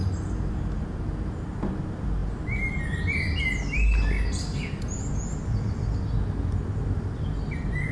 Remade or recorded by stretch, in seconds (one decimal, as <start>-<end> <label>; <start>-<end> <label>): 0.0-7.9 recorded